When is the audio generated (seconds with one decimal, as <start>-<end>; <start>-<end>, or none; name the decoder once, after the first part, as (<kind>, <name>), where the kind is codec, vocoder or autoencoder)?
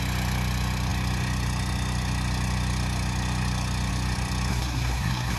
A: 4.5-5.4 (codec, SNAC)